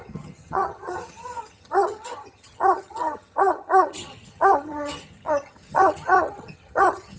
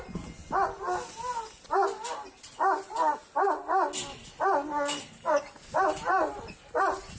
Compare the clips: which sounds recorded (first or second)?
second